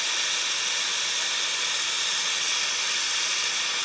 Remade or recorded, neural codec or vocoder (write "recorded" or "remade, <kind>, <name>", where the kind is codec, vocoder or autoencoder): recorded